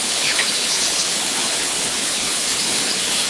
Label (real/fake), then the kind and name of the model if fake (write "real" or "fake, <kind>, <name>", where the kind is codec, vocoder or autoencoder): fake, codec, HILCodec